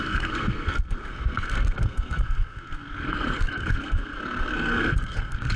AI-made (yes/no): yes